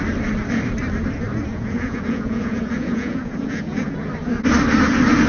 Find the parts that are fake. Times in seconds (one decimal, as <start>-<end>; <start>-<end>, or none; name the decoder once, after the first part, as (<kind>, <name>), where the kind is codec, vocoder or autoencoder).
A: 1.5-4.1 (vocoder, Vocos)